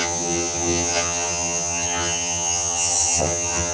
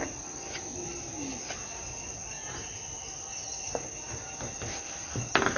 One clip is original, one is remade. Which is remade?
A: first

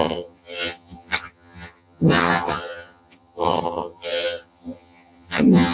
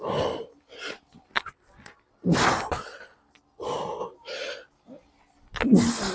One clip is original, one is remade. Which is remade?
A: first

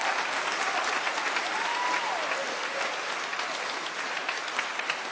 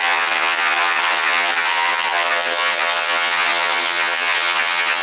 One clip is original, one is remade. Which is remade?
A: second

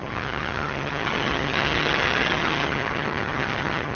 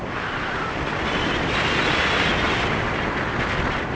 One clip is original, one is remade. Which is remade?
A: first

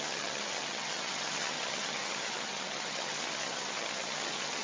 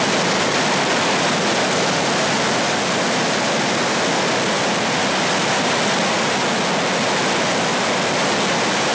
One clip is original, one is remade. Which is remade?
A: first